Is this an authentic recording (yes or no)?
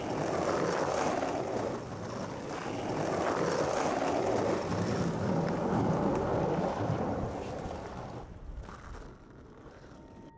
yes